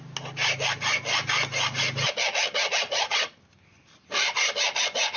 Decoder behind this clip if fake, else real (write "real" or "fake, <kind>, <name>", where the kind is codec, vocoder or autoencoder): real